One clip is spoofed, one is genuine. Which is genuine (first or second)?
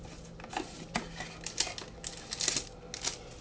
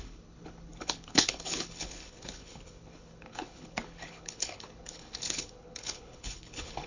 first